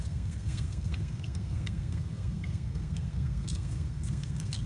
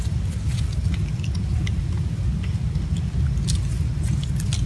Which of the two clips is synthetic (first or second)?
first